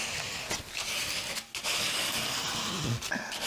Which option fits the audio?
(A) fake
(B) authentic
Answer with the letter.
B